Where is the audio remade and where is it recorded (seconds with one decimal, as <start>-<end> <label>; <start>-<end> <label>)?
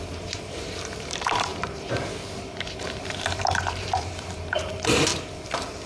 0.0-5.1 remade; 5.1-5.9 recorded